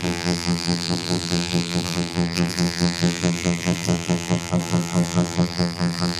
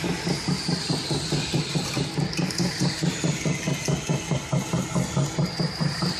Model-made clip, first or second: first